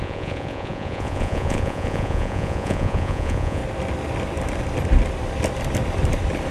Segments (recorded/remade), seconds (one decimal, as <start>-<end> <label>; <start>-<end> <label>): 0.0-3.6 remade; 3.6-6.5 recorded